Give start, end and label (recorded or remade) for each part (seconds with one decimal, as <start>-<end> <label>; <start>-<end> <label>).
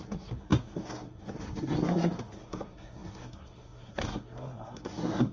0.0-5.3 remade